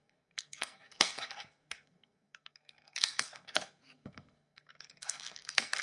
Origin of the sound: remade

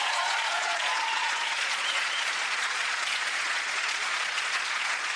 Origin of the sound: remade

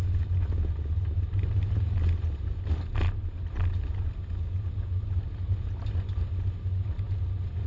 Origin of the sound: recorded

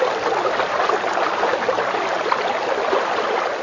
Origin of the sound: recorded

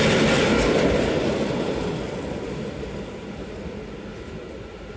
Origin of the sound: recorded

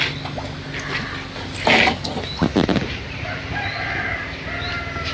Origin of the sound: recorded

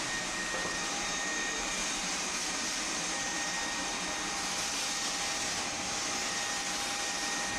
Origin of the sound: remade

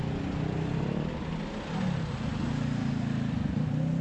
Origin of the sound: recorded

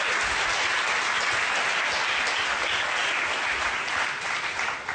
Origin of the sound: recorded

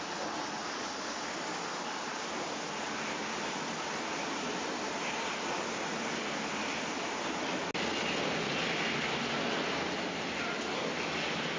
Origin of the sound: recorded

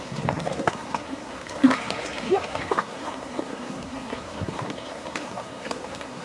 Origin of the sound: remade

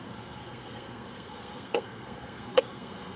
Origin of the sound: remade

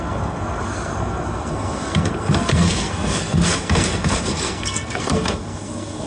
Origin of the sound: remade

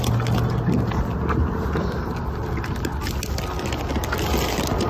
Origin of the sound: recorded